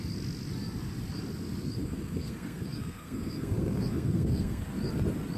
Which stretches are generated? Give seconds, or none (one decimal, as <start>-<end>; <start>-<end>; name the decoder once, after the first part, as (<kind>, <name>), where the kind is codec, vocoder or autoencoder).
1.8-4.6 (codec, SNAC)